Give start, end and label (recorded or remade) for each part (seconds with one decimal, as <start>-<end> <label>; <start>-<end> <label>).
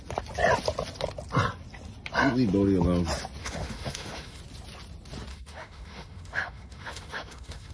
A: 0.0-3.4 recorded; 3.4-4.4 remade; 4.4-5.3 recorded; 5.3-7.7 remade